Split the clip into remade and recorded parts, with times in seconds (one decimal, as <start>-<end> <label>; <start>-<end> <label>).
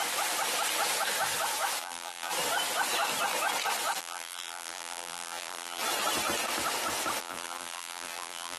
0.0-1.8 recorded; 1.8-2.3 remade; 2.3-4.0 recorded; 4.0-5.8 remade; 5.8-7.2 recorded; 7.2-8.6 remade